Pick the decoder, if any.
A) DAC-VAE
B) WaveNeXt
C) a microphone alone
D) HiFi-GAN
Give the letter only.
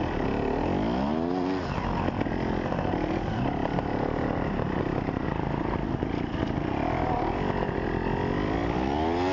C